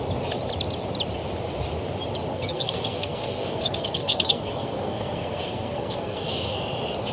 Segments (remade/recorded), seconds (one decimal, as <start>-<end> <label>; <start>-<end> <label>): 0.0-2.3 recorded; 2.3-6.6 remade; 6.6-7.1 recorded

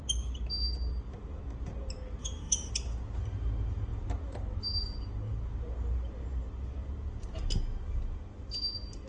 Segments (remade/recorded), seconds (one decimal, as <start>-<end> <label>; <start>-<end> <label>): 0.0-2.2 recorded; 2.2-2.7 remade; 2.7-9.1 recorded

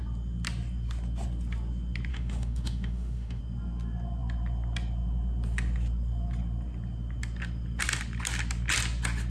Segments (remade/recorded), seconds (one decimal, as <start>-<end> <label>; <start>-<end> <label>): 0.0-2.1 recorded; 2.1-3.4 remade; 3.4-9.3 recorded

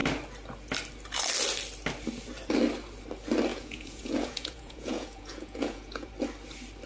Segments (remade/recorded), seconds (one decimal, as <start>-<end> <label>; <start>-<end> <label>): 0.0-3.5 recorded; 3.5-6.1 remade; 6.1-6.9 recorded

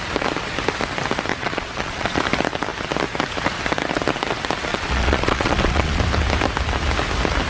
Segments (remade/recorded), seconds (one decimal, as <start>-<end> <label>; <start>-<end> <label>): 0.0-1.3 recorded; 1.3-2.2 remade; 2.2-4.7 recorded; 4.7-6.0 remade; 6.0-7.5 recorded

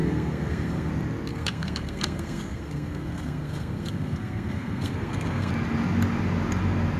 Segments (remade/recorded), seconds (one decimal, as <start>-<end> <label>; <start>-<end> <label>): 0.0-0.9 remade; 0.9-1.3 recorded; 1.3-5.5 remade; 5.5-7.0 recorded